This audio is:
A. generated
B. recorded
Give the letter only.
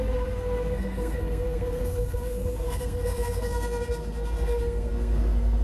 A